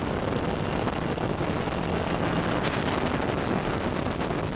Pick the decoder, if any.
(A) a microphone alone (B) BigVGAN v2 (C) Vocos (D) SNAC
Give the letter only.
A